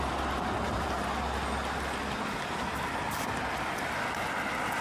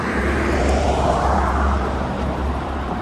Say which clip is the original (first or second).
first